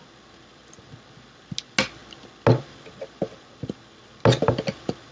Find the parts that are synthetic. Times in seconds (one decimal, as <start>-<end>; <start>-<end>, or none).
none